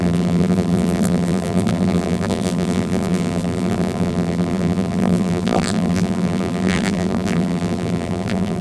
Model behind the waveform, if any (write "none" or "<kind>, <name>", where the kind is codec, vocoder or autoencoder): vocoder, BigVGAN v2